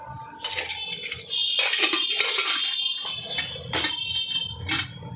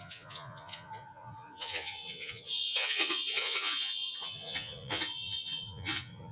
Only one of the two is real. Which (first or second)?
first